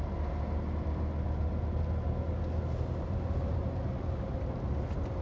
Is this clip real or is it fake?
real